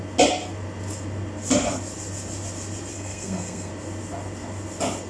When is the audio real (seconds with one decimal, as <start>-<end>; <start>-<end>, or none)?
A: 0.0-2.9; 3.7-5.1